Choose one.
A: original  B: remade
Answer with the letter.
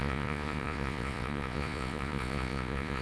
B